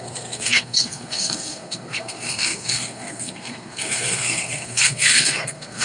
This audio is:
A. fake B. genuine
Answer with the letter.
A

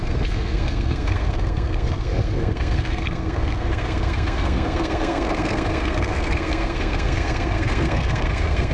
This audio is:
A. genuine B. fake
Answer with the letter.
B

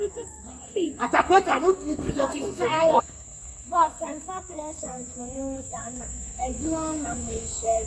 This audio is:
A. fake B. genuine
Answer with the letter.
A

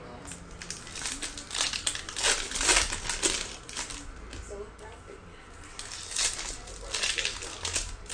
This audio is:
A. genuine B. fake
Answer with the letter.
A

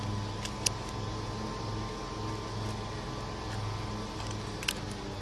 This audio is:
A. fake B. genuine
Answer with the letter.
B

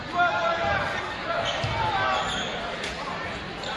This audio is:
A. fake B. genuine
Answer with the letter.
B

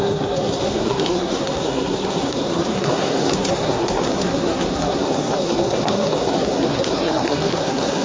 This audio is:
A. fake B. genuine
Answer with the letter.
A